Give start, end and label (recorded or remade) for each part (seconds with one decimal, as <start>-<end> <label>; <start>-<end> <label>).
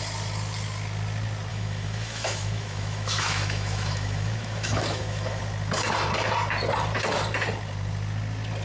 0.0-1.5 recorded; 1.5-5.4 remade; 5.4-8.6 recorded